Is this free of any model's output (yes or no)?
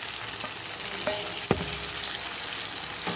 yes